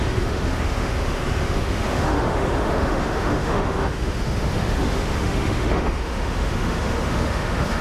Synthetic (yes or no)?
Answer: yes